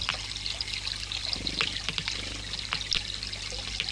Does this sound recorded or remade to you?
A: recorded